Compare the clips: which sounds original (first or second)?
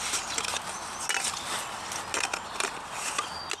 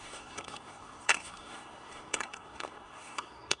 first